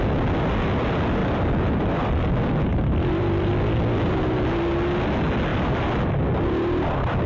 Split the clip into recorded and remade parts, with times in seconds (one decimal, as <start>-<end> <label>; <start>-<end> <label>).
0.0-1.2 recorded; 1.2-2.3 remade; 2.3-2.7 recorded; 2.7-3.5 remade; 3.5-7.3 recorded